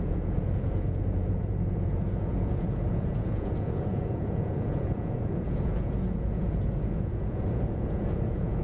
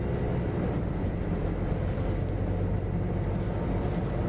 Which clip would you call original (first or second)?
second